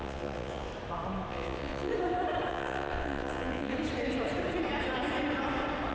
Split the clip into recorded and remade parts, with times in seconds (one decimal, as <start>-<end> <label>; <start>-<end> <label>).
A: 0.0-0.7 remade; 0.7-1.3 recorded; 1.3-1.9 remade; 1.9-2.5 recorded; 2.5-3.7 remade; 3.7-5.9 recorded